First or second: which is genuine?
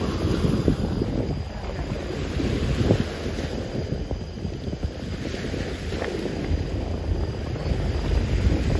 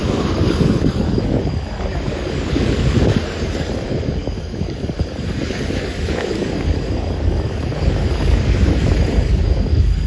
first